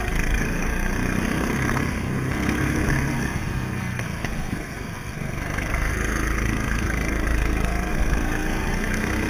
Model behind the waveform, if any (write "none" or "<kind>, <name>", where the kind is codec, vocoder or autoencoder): codec, SNAC